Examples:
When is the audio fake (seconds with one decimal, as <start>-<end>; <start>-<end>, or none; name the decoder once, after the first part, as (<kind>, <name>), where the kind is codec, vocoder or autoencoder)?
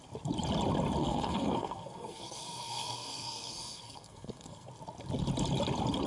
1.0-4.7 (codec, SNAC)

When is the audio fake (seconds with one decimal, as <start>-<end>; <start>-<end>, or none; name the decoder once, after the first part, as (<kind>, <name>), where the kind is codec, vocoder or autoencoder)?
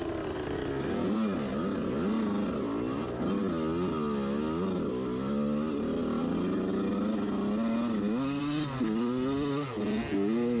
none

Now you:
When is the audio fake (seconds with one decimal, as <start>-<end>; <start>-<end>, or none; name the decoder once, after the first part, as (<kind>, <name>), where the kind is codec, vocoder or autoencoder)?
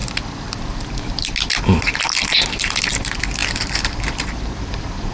none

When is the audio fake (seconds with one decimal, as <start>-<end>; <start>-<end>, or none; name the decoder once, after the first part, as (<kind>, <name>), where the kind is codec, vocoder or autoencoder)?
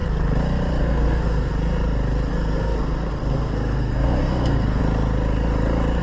0.8-1.5 (codec, SNAC); 2.3-4.8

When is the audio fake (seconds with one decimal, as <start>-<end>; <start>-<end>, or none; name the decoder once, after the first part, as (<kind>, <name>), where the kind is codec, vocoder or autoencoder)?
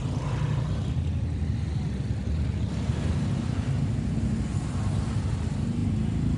none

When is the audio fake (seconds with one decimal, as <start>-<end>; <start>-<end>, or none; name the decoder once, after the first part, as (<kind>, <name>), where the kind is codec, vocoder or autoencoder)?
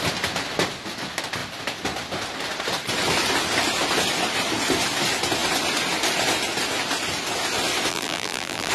7.9-8.7 (vocoder, BigVGAN v2)